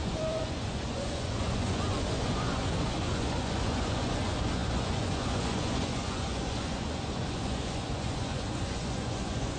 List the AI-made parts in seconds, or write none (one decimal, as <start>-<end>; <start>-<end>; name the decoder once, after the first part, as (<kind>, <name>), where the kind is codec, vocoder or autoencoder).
0.0-9.6 (vocoder, Vocos)